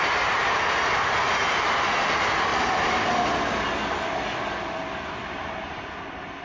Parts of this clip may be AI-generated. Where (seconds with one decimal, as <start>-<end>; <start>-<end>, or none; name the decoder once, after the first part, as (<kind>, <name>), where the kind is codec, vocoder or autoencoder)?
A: none